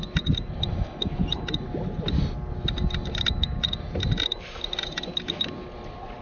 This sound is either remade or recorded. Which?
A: recorded